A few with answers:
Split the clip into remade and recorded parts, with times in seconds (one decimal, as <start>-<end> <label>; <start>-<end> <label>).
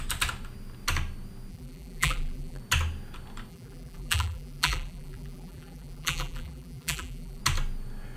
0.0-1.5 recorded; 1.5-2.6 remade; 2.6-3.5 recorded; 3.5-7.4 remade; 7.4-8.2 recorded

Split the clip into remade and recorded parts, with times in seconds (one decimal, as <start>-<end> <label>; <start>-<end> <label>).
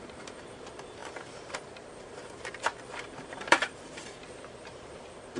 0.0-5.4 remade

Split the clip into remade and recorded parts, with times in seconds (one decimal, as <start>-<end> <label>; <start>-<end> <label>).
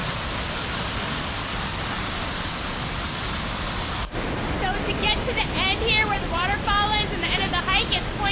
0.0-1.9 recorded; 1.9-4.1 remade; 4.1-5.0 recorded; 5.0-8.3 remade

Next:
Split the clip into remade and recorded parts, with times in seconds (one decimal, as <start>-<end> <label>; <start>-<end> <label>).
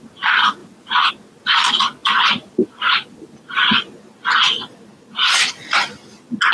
0.0-0.6 recorded; 0.6-1.1 remade; 1.1-6.5 recorded